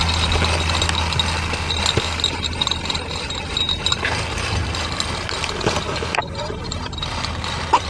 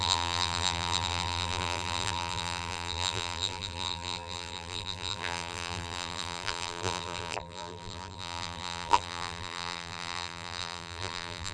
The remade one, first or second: second